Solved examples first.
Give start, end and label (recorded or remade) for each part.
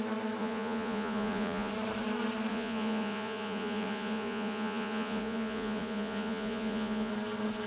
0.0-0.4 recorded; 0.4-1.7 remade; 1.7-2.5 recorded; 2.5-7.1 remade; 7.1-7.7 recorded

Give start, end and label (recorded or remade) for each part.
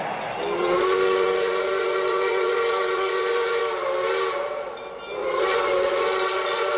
0.0-0.6 recorded; 0.6-3.6 remade; 3.6-5.2 recorded; 5.2-6.8 remade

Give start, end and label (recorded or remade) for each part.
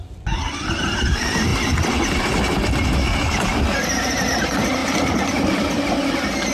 0.0-6.5 recorded